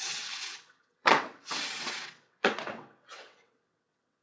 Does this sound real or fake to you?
fake